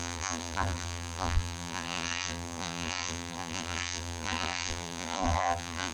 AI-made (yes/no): yes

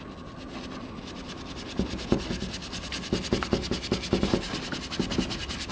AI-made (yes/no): no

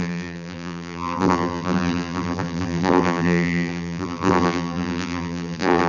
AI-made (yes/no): yes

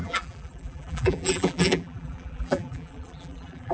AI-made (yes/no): yes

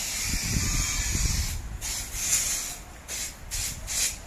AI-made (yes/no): no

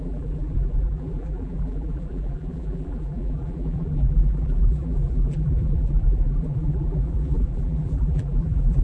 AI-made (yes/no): yes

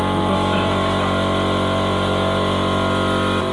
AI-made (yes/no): no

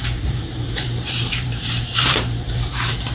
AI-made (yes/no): yes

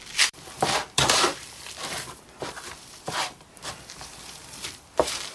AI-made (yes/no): yes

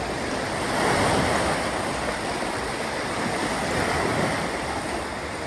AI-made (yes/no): no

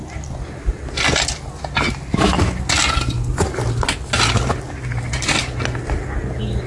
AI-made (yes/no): no